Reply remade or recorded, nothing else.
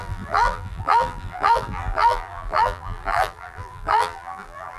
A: remade